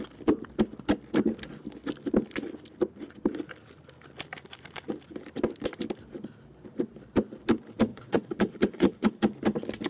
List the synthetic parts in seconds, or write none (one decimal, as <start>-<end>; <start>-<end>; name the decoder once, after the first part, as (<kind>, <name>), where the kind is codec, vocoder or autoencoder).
7.9-9.1 (vocoder, WaveNeXt)